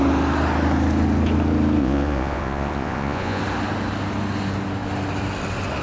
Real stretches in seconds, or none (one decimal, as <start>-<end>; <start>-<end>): 0.0-1.8; 3.4-5.8